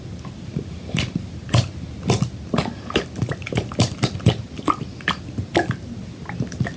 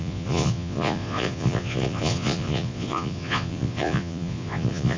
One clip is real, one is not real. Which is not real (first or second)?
second